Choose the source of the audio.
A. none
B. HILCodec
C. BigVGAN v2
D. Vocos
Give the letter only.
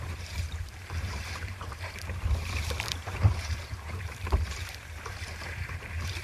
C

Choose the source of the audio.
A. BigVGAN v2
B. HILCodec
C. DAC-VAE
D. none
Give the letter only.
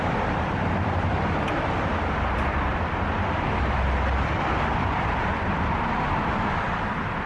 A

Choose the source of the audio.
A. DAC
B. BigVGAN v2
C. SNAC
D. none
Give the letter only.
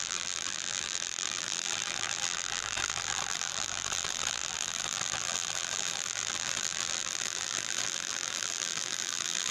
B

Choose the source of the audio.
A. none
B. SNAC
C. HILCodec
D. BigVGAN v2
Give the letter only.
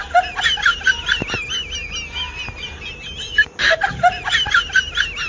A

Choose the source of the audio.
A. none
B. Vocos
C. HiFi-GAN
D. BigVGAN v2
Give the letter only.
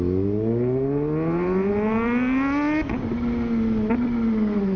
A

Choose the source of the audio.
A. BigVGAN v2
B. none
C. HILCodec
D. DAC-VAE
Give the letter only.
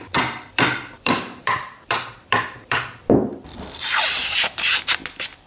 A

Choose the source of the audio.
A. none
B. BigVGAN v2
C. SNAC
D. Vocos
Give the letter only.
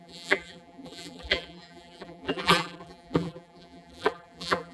B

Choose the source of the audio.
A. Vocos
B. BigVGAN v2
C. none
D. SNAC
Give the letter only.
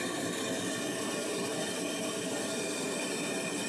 C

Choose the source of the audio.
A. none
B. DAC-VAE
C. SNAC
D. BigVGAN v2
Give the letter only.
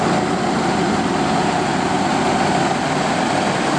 A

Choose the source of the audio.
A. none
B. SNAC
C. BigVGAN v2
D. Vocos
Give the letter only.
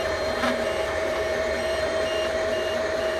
C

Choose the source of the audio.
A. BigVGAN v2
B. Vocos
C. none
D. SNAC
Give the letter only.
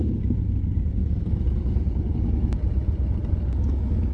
C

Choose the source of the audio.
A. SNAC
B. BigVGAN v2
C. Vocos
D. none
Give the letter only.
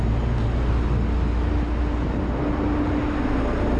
D